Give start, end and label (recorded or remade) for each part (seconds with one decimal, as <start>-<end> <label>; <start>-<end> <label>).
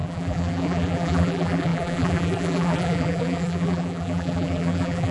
0.0-5.1 remade